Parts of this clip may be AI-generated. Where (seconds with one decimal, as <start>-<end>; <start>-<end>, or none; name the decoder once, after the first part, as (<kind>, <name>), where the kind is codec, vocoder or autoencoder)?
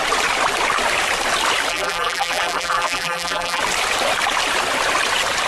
1.7-3.6 (vocoder, BigVGAN v2)